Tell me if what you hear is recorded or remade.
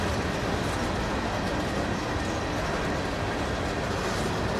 recorded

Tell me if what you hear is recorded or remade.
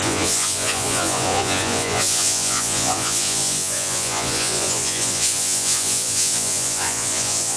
remade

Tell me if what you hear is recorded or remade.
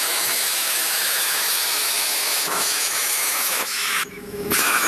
remade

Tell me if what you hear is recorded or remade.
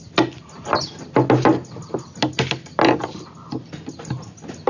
recorded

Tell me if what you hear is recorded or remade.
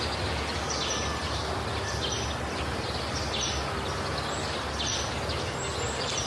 recorded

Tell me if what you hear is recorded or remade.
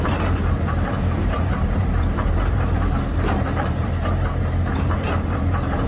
remade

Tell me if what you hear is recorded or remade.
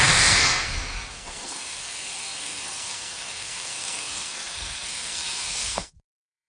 remade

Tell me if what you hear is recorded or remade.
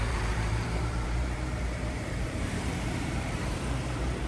remade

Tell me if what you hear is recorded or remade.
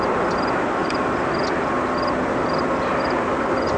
recorded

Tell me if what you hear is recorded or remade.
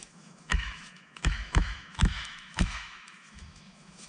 remade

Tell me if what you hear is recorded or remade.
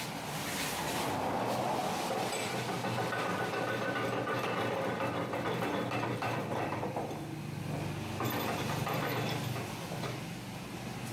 recorded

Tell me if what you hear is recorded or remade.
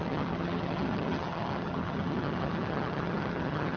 remade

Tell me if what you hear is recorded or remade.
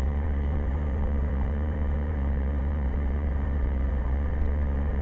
remade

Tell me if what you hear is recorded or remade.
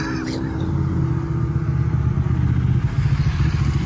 recorded